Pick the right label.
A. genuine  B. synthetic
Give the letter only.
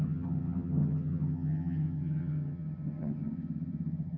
B